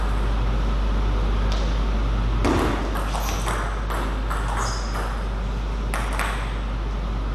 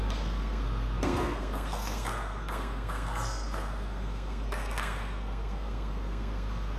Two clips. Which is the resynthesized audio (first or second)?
second